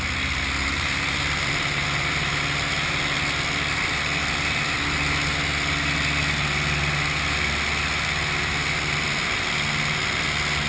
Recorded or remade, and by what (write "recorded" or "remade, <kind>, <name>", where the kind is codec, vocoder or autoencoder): recorded